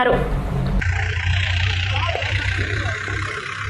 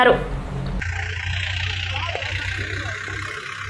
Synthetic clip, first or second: first